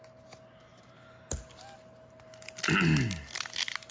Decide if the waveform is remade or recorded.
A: recorded